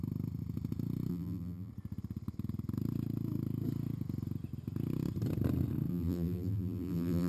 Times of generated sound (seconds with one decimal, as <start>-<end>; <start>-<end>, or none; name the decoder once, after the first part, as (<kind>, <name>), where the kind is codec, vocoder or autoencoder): 1.1-1.7 (vocoder, BigVGAN v2); 5.9-7.3